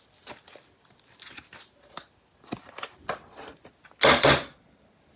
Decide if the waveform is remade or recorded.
recorded